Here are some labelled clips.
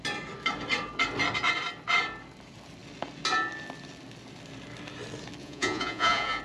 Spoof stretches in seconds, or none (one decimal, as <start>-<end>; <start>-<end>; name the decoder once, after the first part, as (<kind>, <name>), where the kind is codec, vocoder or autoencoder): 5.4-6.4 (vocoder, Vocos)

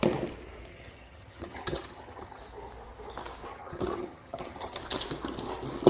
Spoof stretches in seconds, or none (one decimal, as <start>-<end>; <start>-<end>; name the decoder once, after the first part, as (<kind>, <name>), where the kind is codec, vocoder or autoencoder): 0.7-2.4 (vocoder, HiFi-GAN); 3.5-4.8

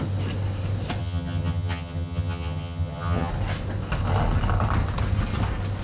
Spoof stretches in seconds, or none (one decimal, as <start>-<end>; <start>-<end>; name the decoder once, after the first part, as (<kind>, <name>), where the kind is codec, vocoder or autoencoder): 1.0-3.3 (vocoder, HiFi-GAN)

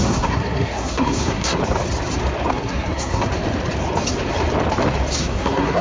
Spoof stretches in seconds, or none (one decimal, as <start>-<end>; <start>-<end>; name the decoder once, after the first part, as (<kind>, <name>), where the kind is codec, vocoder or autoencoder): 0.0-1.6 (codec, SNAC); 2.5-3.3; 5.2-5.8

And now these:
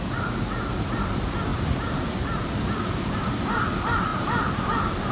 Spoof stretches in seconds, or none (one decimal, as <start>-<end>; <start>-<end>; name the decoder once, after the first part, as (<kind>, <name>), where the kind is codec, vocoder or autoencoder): 1.5-3.6 (vocoder, BigVGAN v2); 4.1-5.1